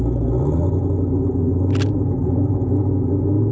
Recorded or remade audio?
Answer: recorded